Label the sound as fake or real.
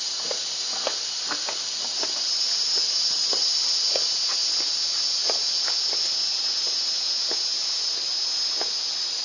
real